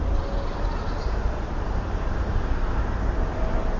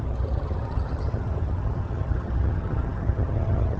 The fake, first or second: second